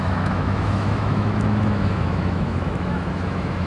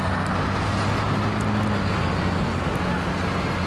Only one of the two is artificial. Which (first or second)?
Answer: first